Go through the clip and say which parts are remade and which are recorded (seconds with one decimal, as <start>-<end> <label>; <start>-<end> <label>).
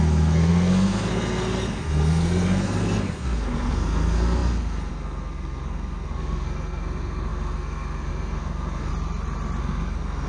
0.0-8.9 remade; 8.9-9.6 recorded; 9.6-10.3 remade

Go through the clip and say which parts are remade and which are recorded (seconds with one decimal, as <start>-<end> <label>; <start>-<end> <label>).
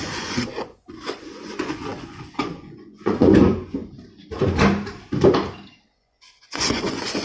0.0-3.8 remade; 3.8-5.8 recorded; 5.8-7.2 remade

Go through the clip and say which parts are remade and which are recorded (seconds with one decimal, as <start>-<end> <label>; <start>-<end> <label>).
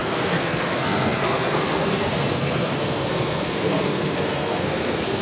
0.0-5.2 remade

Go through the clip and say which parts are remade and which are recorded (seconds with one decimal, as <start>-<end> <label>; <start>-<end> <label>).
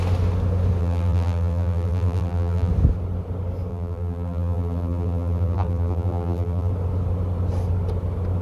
0.0-0.8 recorded; 0.8-2.7 remade; 2.7-3.7 recorded; 3.7-6.7 remade; 6.7-8.4 recorded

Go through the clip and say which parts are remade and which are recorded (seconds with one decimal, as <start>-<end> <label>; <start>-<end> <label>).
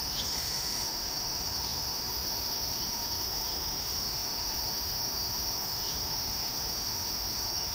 0.0-7.7 remade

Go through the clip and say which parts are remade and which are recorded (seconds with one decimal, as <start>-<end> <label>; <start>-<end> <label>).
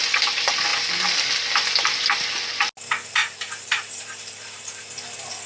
0.0-3.2 recorded; 3.2-4.9 remade; 4.9-5.5 recorded